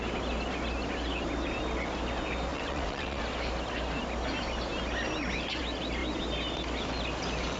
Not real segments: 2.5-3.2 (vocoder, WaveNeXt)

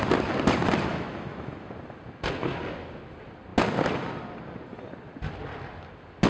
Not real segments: 0.9-1.7 (autoencoder, DAC-VAE)

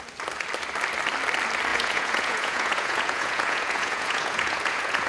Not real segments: 1.7-5.1 (vocoder, Vocos)